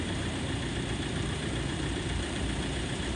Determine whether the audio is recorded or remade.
remade